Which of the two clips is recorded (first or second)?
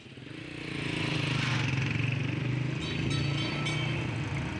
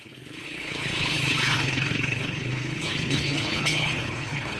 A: first